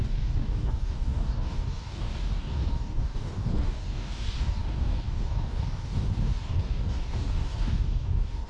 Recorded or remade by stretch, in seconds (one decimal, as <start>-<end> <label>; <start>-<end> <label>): 0.0-8.5 remade